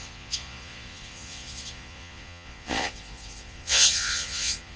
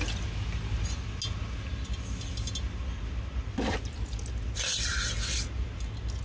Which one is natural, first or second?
second